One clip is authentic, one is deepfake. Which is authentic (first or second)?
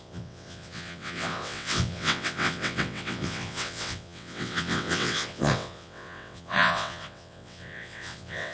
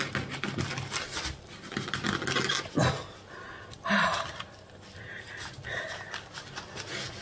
second